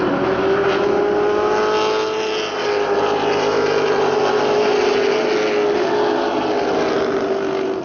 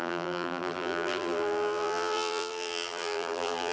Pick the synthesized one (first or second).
second